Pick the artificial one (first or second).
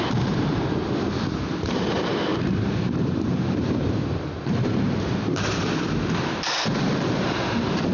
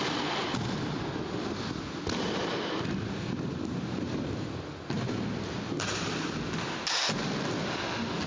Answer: first